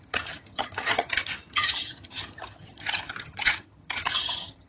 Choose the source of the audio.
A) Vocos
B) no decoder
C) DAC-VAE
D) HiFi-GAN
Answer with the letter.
D